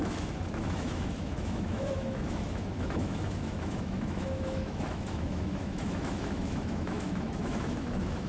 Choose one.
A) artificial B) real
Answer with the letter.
A